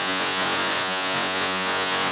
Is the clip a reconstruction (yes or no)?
yes